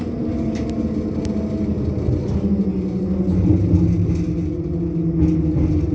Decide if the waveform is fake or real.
real